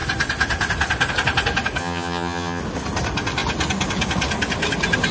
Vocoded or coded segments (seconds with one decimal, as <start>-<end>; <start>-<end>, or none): 1.8-2.6